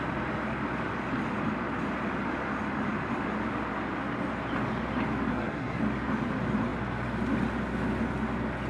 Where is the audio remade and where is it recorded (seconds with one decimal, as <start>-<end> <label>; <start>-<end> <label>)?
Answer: 0.0-5.3 recorded; 5.3-5.8 remade; 5.8-8.7 recorded